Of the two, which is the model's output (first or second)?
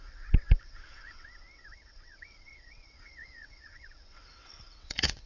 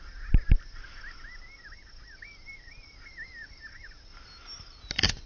first